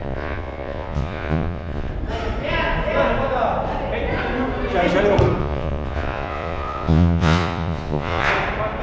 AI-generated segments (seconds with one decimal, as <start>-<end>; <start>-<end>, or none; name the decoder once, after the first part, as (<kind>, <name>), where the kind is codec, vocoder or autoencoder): 0.0-1.9 (vocoder, Vocos); 5.4-8.3